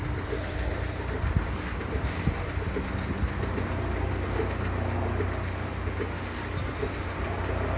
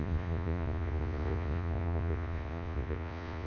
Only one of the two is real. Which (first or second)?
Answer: first